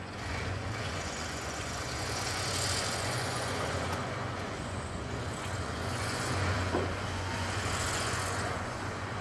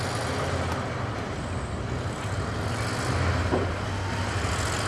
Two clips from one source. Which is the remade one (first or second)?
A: first